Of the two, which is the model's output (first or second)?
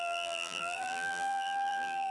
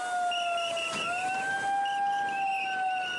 first